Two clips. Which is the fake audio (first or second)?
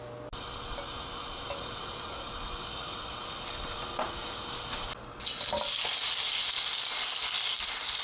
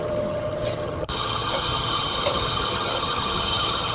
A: second